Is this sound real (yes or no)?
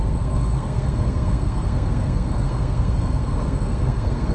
no